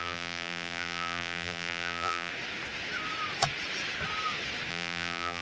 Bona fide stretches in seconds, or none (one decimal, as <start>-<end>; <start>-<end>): 2.3-4.7